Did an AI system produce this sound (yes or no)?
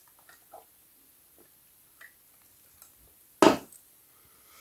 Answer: no